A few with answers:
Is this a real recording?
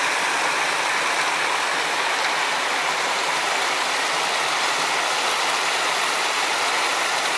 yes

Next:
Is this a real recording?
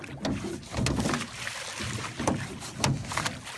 yes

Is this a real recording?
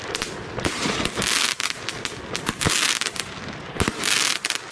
yes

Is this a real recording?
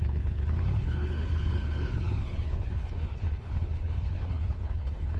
no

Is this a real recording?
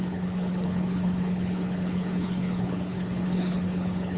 no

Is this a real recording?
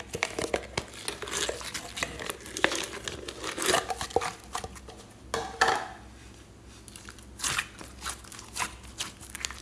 yes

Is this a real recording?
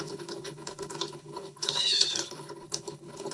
no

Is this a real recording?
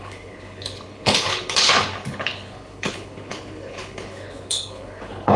no